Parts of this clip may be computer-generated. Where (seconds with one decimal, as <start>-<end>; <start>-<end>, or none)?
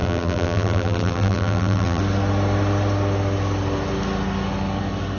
0.0-2.0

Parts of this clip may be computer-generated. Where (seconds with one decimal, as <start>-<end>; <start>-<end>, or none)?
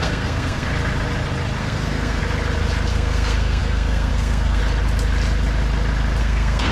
0.0-0.7; 1.6-2.2; 2.9-4.6; 6.2-6.7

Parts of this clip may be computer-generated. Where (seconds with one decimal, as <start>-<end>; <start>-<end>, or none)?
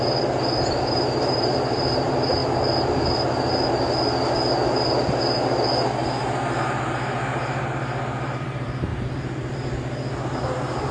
0.0-2.4; 6.6-8.9; 10.4-10.9